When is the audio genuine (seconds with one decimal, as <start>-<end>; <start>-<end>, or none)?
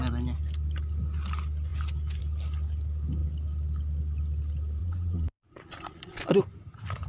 0.0-4.8; 6.4-7.1